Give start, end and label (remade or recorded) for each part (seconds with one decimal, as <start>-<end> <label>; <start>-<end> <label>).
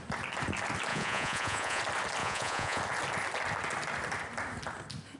0.0-0.9 recorded; 0.9-1.8 remade; 1.8-2.2 recorded; 2.2-2.8 remade; 2.8-5.2 recorded